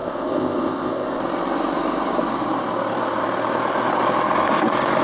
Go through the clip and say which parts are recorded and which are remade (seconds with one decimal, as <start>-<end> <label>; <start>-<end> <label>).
0.0-1.2 remade; 1.2-5.0 recorded